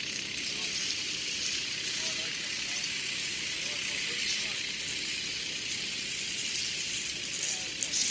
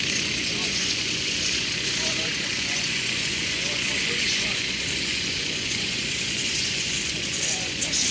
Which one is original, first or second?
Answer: first